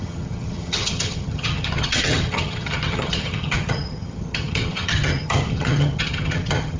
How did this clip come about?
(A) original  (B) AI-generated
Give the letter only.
B